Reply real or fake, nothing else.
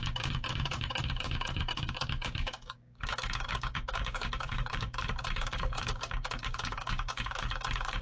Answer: fake